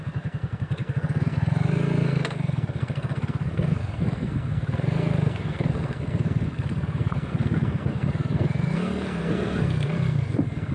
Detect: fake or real fake